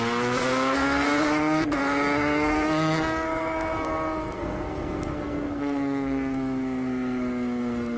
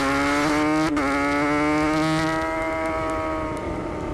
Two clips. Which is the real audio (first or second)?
second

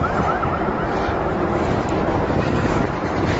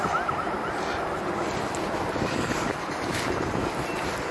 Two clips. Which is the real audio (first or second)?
second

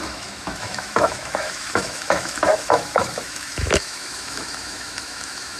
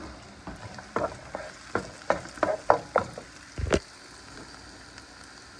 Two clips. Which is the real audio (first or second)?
second